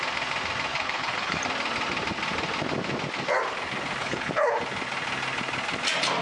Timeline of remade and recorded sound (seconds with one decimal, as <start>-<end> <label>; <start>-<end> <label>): 0.0-0.7 recorded; 0.7-1.4 remade; 1.4-4.0 recorded; 4.0-4.6 remade; 4.6-6.2 recorded

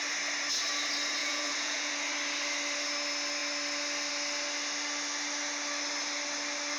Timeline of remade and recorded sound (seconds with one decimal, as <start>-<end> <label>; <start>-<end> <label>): 0.0-1.2 recorded; 1.2-1.9 remade; 1.9-6.8 recorded